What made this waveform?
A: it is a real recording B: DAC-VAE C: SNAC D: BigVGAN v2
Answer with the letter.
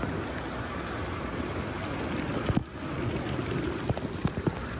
A